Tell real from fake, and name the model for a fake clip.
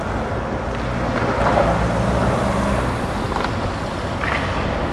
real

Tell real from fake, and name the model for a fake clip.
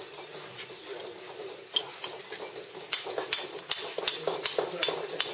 real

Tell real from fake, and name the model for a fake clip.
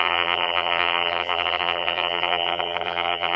fake, vocoder, BigVGAN v2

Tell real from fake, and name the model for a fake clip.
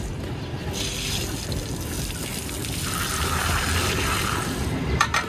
real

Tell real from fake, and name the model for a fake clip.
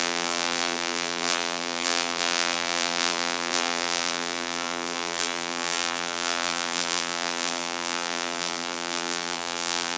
fake, vocoder, BigVGAN v2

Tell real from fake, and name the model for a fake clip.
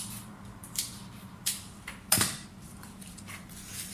fake, vocoder, BigVGAN v2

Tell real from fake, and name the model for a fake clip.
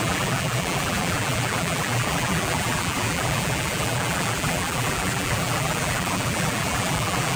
fake, vocoder, BigVGAN v2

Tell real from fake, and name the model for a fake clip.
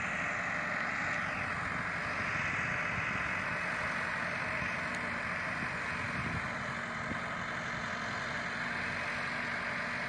real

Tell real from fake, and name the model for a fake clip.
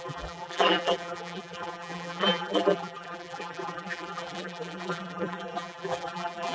fake, vocoder, BigVGAN v2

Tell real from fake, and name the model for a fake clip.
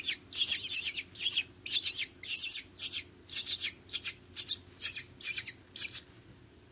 fake, vocoder, BigVGAN v2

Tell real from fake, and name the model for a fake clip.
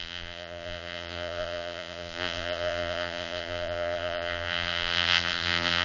fake, vocoder, BigVGAN v2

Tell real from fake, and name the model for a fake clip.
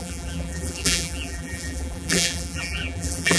fake, vocoder, BigVGAN v2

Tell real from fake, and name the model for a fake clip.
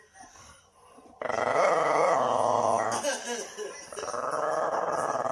fake, vocoder, BigVGAN v2